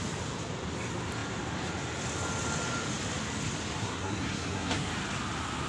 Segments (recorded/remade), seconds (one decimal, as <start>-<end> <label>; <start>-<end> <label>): 0.0-3.8 recorded; 3.8-4.9 remade; 4.9-5.7 recorded

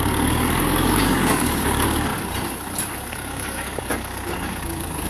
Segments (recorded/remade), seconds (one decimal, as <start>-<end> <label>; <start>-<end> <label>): 0.0-2.1 remade; 2.1-3.1 recorded; 3.1-5.1 remade

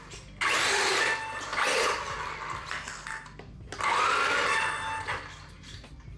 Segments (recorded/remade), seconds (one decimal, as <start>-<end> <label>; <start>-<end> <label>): 0.0-6.2 recorded

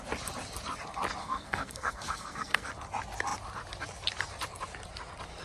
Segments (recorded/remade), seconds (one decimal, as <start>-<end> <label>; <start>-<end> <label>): 0.0-1.2 recorded; 1.2-2.7 remade; 2.7-5.4 recorded

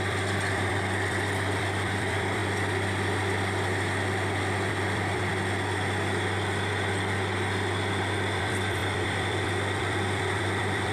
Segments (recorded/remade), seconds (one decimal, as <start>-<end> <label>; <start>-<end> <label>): 0.0-2.4 remade; 2.4-4.7 recorded; 4.7-5.3 remade; 5.3-8.4 recorded; 8.4-10.9 remade

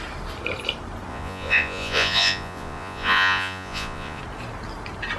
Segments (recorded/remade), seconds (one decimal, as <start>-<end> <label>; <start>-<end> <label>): 0.0-1.1 recorded; 1.1-4.2 remade; 4.2-5.2 recorded

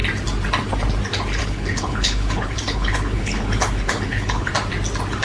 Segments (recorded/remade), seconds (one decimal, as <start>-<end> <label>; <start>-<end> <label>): 0.0-1.4 recorded; 1.4-4.5 remade; 4.5-5.2 recorded

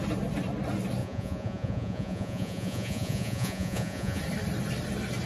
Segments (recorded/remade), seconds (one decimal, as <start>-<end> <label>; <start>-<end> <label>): 0.0-1.0 recorded; 1.0-4.2 remade; 4.2-5.3 recorded